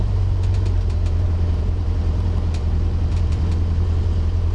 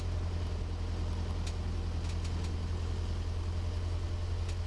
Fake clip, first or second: first